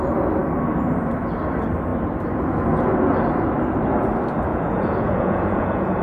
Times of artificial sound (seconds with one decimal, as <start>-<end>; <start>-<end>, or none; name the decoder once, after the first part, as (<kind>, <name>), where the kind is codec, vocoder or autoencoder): 4.5-6.0 (vocoder, Vocos)